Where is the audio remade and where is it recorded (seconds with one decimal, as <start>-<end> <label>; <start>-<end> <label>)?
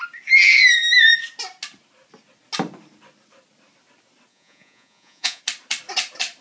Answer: 0.0-4.3 recorded; 4.3-5.4 remade; 5.4-6.4 recorded